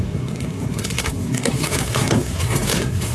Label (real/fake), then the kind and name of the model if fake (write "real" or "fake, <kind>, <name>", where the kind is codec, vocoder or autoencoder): fake, codec, SNAC